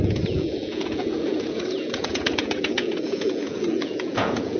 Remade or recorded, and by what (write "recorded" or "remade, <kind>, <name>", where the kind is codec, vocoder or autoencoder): remade, vocoder, Vocos